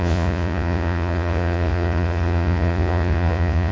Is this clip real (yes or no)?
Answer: no